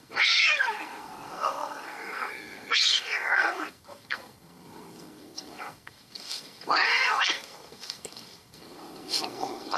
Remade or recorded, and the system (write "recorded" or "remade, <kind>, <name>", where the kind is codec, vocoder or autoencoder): remade, codec, SNAC